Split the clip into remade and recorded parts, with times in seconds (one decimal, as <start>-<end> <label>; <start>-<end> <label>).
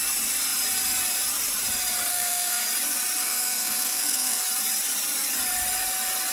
0.0-2.1 recorded; 2.1-2.6 remade; 2.6-3.2 recorded; 3.2-4.4 remade; 4.4-6.3 recorded